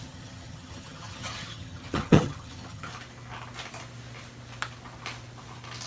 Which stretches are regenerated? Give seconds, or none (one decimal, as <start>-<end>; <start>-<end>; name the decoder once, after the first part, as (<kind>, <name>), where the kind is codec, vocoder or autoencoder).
0.0-2.9 (vocoder, HiFi-GAN)